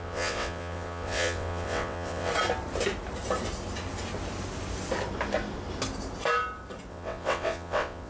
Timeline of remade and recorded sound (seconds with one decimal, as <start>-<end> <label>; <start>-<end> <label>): 0.0-2.3 remade; 2.3-6.9 recorded; 6.9-8.1 remade